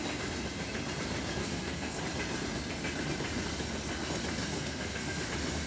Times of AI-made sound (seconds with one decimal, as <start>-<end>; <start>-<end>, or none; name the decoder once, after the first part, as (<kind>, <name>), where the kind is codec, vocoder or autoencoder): 1.4-2.0 (codec, SNAC); 4.5-5.3